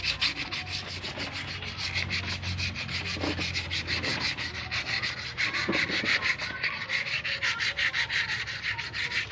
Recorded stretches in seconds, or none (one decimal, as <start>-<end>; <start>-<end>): 0.0-9.3